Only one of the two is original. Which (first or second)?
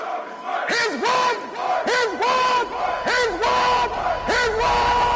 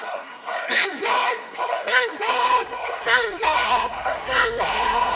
first